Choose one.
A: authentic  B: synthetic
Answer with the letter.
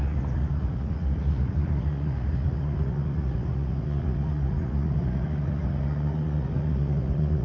B